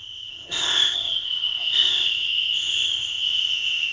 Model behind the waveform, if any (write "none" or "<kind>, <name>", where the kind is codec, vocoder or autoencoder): codec, ZipCodec